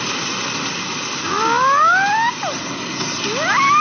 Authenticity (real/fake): real